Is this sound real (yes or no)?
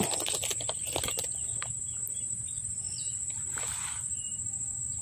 yes